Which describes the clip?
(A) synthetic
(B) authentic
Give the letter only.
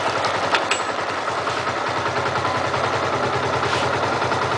B